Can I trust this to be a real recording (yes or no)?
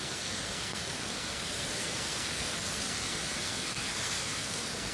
no